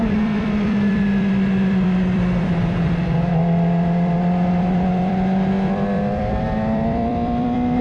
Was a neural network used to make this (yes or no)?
yes